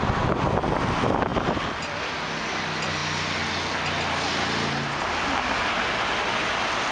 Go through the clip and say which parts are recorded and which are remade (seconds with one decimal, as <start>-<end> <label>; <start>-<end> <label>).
0.0-6.9 recorded